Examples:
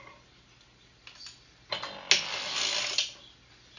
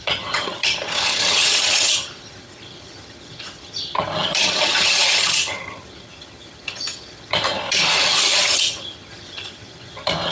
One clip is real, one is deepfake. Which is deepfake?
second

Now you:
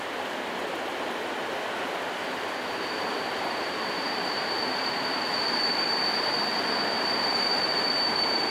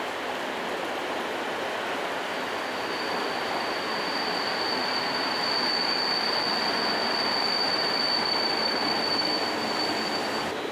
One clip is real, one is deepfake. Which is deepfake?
first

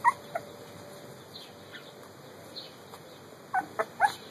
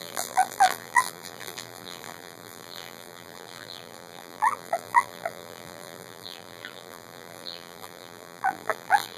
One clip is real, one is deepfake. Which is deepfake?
second